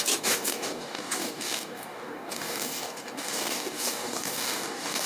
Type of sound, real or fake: fake